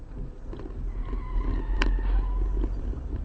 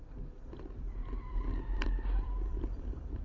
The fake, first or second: second